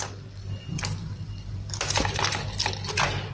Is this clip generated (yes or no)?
no